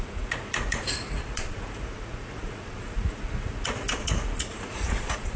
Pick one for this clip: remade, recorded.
remade